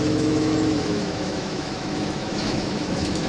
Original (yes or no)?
no